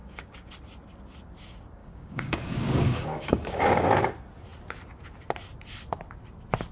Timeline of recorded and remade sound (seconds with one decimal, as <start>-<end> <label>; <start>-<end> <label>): 0.0-0.5 remade; 0.5-1.8 recorded; 1.8-4.1 remade; 4.1-6.7 recorded